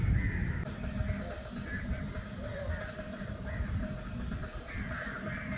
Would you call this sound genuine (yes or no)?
yes